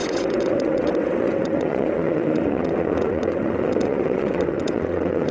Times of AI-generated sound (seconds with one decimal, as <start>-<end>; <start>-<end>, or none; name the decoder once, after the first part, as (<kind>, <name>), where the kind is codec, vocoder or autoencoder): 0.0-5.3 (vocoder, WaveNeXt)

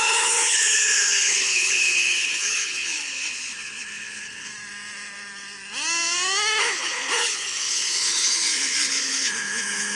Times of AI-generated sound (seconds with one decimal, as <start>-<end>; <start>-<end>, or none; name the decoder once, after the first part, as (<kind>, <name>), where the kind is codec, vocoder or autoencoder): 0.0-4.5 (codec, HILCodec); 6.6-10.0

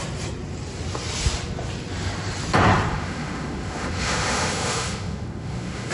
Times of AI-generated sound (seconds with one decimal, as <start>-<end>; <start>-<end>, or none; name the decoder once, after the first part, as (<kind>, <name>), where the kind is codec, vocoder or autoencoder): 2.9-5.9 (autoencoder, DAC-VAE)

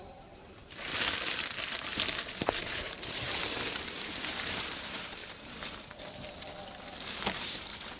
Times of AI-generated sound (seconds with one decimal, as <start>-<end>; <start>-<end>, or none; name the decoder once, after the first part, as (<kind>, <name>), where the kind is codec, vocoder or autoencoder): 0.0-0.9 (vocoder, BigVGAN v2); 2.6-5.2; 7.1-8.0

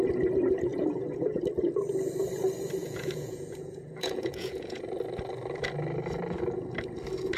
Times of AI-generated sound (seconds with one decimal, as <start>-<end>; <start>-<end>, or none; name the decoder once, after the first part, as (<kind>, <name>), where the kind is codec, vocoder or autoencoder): 0.7-1.4 (vocoder, Vocos); 2.8-4.8